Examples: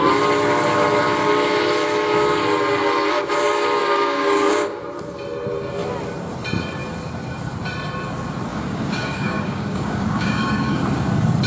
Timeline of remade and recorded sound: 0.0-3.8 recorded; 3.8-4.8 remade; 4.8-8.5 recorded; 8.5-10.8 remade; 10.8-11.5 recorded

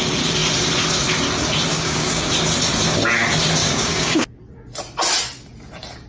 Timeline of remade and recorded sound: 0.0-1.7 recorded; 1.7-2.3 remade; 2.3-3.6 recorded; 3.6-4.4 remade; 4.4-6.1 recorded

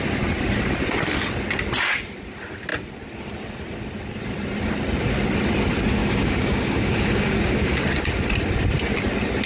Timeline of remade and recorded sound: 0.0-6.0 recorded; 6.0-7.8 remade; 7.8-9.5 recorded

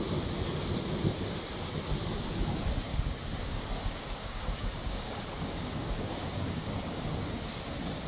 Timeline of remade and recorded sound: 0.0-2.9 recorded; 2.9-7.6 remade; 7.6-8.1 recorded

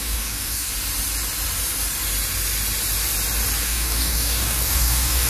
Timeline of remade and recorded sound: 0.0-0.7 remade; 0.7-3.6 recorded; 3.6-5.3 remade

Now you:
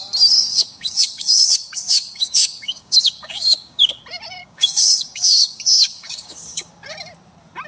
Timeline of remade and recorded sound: 0.0-0.5 recorded; 0.5-4.0 remade; 4.0-4.4 recorded; 4.4-6.7 remade; 6.7-7.7 recorded

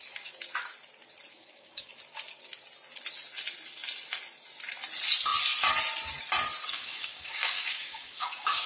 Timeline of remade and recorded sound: 0.0-1.3 recorded; 1.3-1.9 remade; 1.9-6.7 recorded; 6.7-8.7 remade

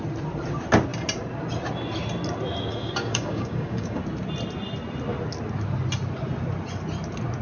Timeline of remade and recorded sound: 0.0-2.7 recorded; 2.7-4.0 remade; 4.0-7.4 recorded